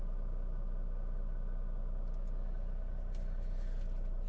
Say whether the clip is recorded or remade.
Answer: recorded